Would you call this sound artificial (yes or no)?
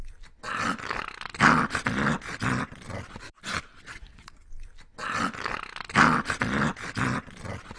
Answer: no